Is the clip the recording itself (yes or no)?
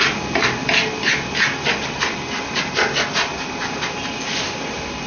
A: yes